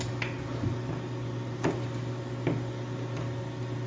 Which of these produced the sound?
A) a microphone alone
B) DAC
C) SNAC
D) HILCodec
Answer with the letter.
A